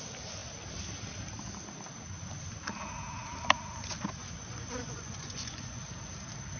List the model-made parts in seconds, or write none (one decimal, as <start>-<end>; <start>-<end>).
4.2-5.8